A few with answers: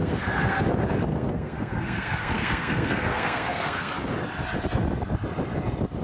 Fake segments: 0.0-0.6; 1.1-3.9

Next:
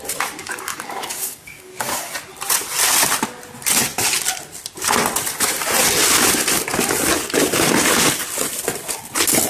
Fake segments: 0.4-2.1

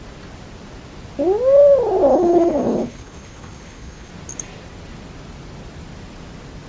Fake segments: 2.1-4.1